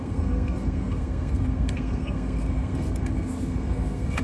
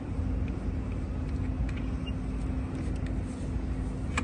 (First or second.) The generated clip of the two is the first